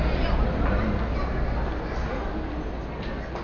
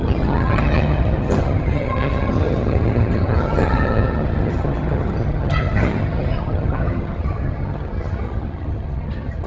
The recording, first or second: first